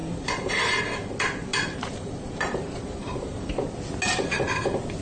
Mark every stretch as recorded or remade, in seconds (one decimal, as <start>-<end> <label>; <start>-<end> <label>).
0.0-0.8 remade; 0.8-1.5 recorded; 1.5-3.6 remade; 3.6-5.0 recorded